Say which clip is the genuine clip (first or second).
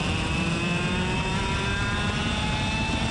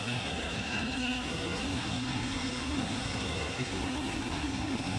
first